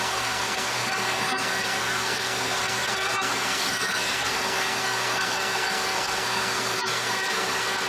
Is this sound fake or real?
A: fake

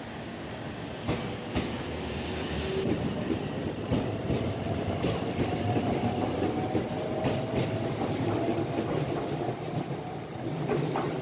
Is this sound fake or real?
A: real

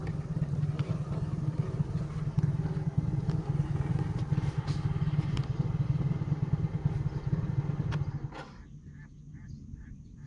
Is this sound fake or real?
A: real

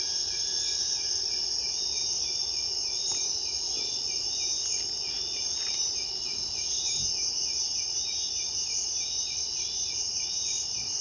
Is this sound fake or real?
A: real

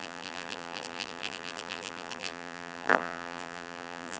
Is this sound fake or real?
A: fake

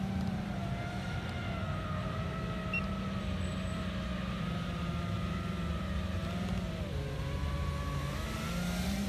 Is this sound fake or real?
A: real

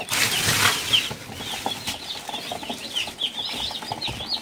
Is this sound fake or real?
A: real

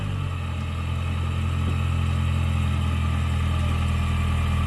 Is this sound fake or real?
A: real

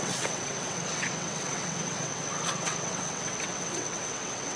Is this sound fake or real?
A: fake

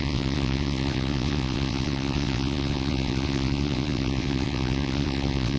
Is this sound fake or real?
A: fake